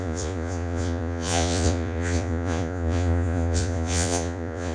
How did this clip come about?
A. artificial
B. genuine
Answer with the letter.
A